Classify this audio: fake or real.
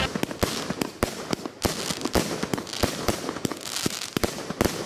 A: real